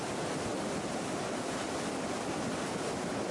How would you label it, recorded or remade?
remade